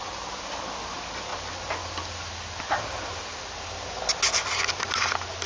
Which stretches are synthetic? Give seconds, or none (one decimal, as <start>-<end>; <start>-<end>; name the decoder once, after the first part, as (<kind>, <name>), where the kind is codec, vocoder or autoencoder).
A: none